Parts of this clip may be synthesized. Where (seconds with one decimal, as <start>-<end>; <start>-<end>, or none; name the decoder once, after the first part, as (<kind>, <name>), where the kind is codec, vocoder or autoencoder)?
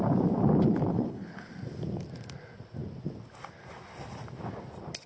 0.9-1.5 (codec, HILCodec)